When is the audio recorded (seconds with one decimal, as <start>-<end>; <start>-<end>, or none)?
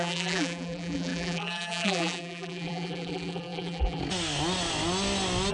4.0-5.5